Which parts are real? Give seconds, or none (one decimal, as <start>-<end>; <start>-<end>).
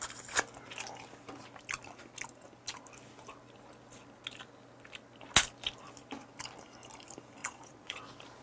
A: 0.0-7.4; 8.0-8.4